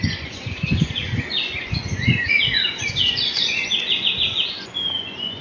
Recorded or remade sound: remade